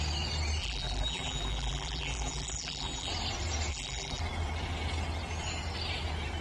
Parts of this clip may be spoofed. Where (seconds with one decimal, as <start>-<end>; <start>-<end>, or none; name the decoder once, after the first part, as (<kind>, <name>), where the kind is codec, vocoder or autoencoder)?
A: 0.6-3.1 (vocoder, BigVGAN v2); 3.7-4.2